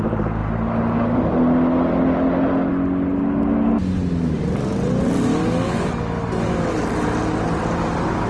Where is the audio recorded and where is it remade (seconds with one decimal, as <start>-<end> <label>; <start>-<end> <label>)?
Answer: 0.0-8.3 recorded